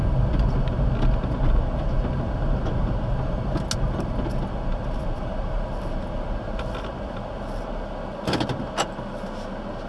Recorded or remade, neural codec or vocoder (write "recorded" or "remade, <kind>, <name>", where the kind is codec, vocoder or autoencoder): recorded